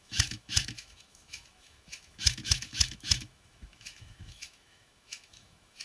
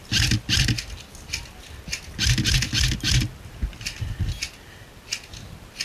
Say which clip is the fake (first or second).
first